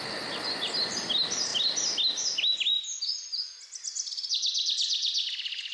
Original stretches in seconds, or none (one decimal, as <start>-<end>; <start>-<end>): 0.0-5.7